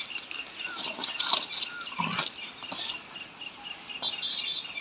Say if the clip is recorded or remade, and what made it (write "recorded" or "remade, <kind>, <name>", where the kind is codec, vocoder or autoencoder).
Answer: recorded